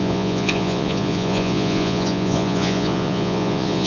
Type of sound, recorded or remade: remade